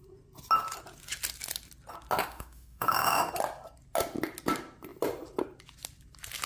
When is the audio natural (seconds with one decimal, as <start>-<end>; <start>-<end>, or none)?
0.0-2.2; 3.3-6.5